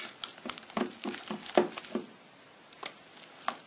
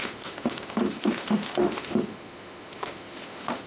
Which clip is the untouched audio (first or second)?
first